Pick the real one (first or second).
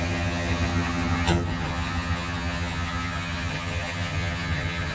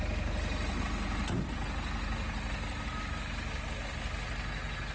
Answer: second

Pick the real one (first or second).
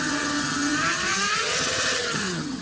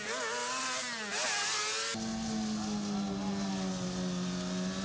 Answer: second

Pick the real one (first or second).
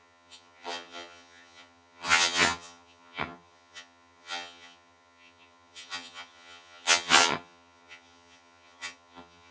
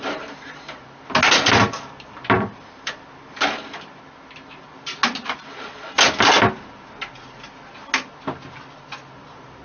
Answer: second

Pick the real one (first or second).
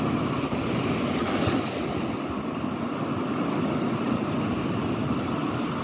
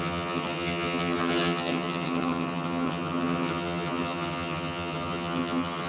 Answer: first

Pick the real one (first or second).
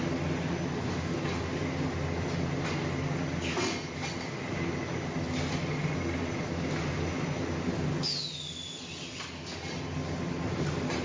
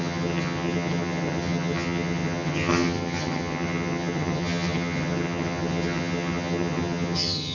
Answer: first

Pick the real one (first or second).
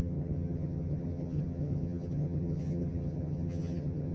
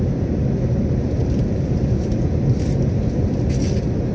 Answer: second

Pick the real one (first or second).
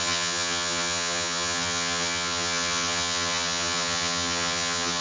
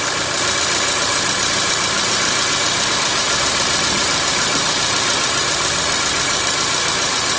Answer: second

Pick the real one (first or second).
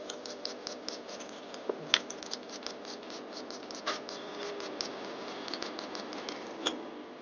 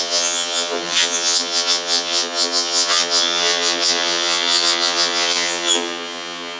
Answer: first